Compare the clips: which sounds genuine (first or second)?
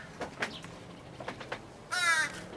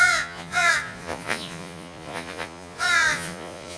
first